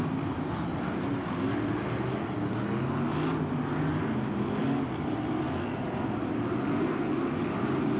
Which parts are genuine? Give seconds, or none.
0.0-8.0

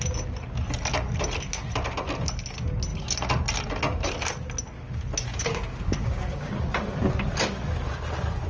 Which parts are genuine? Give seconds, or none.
0.0-5.3; 6.5-8.5

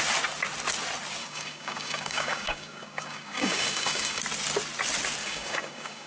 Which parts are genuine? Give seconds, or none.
0.0-1.2; 4.2-5.2

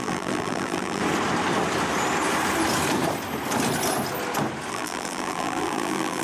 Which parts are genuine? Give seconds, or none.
1.0-4.7

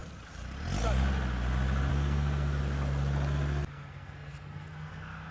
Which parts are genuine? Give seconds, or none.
0.0-1.9; 2.6-3.7

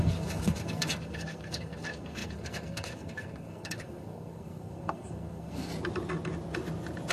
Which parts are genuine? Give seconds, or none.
5.7-7.1